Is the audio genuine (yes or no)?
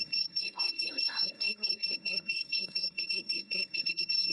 no